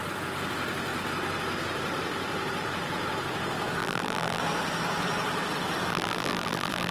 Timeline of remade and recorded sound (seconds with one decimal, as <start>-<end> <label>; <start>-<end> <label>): 0.0-3.8 recorded; 3.8-4.4 remade; 4.4-5.9 recorded; 5.9-6.9 remade